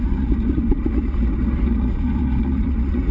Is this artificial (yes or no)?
yes